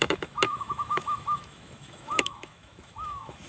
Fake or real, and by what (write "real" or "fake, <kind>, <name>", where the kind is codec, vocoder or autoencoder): fake, autoencoder, DAC-VAE